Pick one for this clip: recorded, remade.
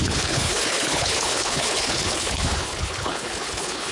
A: remade